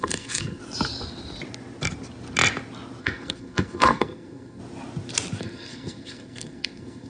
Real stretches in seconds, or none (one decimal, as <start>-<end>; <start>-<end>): 0.6-3.0; 4.6-5.4